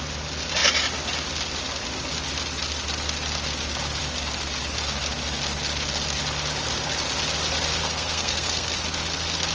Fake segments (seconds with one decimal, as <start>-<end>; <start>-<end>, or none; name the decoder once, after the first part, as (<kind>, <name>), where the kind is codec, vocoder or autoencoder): 7.8-8.7 (codec, SNAC)